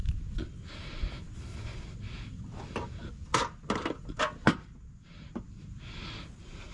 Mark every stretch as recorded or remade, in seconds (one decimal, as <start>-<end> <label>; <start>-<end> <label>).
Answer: 0.0-6.7 recorded